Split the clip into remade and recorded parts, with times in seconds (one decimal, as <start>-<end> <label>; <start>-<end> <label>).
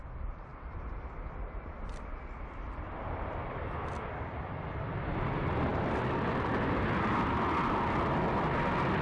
0.0-0.5 recorded; 0.5-3.6 remade; 3.6-5.7 recorded; 5.7-6.5 remade; 6.5-9.0 recorded